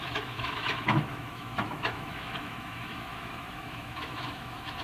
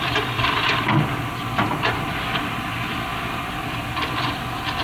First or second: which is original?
second